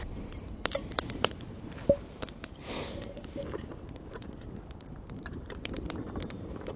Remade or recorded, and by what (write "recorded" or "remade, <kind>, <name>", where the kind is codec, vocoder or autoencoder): remade, vocoder, BigVGAN v2